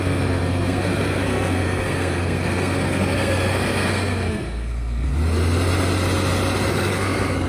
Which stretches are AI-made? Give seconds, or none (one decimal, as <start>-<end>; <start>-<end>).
0.0-5.1; 6.7-7.5